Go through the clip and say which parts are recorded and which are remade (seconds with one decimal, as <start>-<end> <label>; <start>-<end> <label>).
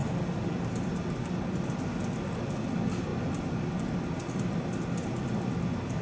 0.0-6.0 recorded